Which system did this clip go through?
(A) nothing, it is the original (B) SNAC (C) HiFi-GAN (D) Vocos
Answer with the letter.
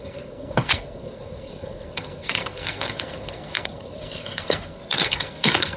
B